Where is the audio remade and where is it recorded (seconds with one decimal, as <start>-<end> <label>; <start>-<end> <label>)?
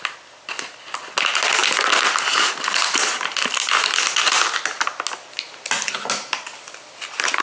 0.0-7.4 recorded